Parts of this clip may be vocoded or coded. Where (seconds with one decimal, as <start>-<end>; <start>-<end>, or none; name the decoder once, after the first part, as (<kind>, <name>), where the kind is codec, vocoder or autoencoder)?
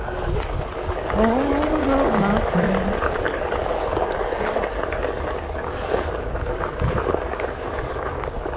0.0-1.8 (codec, DAC); 3.2-8.6